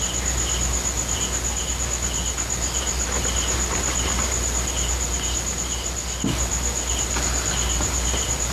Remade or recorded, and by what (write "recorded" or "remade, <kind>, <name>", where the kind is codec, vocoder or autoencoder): recorded